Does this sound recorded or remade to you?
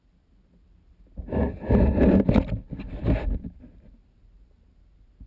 recorded